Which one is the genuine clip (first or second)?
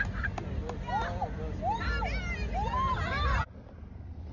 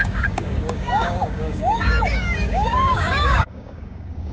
first